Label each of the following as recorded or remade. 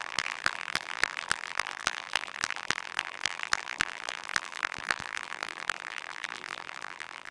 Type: remade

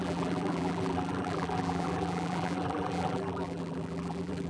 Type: remade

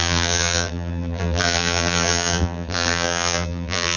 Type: remade